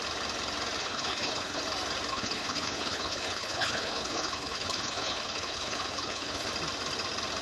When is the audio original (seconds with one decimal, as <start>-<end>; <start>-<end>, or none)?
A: 0.0-0.8; 1.6-2.1; 6.5-7.4